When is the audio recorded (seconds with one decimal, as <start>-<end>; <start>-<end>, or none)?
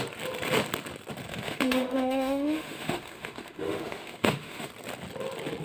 0.0-1.3; 4.7-5.6